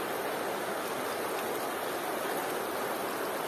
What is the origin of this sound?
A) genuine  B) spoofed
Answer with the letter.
A